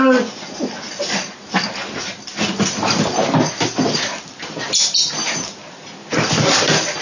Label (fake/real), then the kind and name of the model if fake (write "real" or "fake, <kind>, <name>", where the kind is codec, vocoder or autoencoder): real